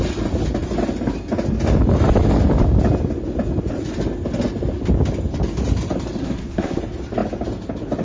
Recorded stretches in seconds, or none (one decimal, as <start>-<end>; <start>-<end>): 0.0-6.2; 6.8-8.0